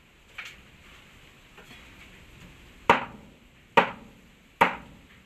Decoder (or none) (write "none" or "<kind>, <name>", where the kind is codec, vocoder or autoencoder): none